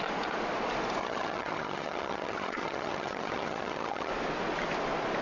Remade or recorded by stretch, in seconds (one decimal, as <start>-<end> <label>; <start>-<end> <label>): 0.0-1.0 recorded; 1.0-4.1 remade; 4.1-5.2 recorded